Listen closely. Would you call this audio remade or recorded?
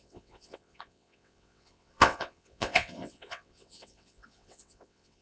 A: remade